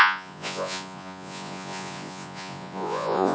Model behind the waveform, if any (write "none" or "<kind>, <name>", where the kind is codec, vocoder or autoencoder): vocoder, Vocos